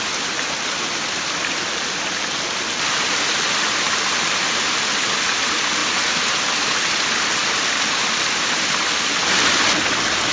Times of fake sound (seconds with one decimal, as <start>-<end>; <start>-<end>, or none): none